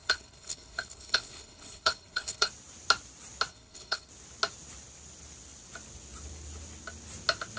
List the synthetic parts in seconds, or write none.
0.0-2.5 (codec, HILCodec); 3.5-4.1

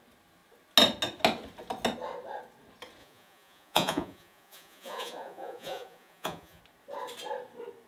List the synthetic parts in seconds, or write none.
3.0-6.6 (vocoder, Vocos)